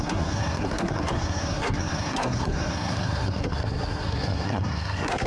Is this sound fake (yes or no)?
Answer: yes